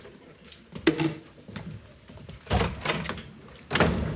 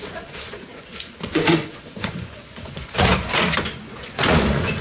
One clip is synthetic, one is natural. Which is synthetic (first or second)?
second